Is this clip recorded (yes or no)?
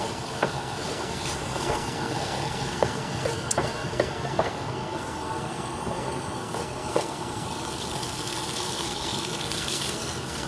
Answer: no